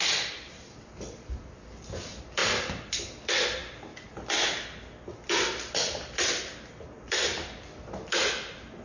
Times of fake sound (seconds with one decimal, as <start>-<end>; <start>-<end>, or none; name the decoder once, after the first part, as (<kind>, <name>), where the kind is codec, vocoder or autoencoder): none